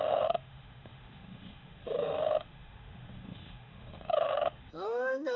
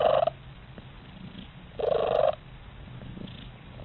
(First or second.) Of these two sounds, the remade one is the first